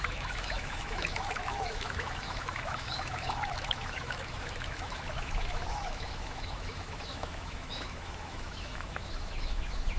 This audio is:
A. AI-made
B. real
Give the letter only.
A